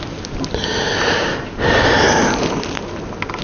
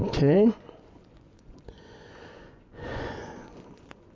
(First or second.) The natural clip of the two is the first